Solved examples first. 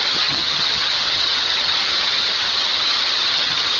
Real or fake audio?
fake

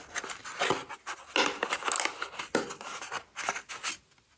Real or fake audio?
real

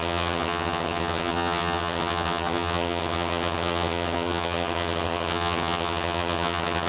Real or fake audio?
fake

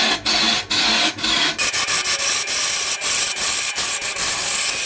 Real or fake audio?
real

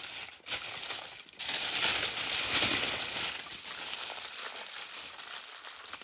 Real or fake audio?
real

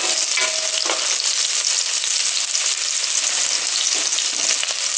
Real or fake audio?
real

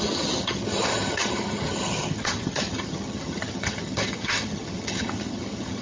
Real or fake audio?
fake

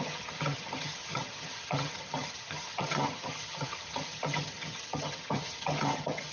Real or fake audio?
fake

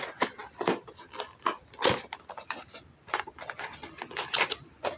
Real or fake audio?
real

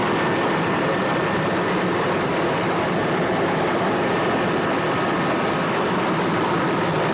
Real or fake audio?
real